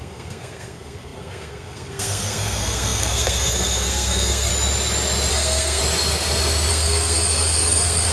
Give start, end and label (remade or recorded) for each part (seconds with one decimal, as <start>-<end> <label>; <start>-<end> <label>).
0.0-4.5 remade; 4.5-5.3 recorded; 5.3-5.8 remade; 5.8-6.7 recorded; 6.7-8.1 remade